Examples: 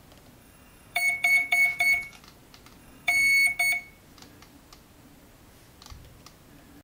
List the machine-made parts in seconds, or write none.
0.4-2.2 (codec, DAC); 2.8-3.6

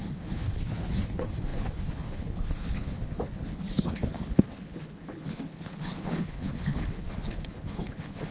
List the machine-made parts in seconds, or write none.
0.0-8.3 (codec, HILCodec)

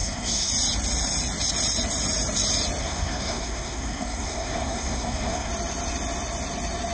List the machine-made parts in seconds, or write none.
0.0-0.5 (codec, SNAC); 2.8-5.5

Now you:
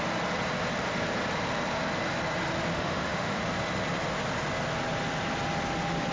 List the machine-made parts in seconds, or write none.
2.7-3.4 (autoencoder, DAC-VAE)